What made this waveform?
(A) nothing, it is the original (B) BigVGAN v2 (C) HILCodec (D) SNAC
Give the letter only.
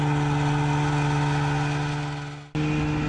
A